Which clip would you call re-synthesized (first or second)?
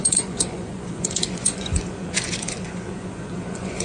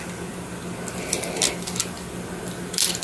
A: first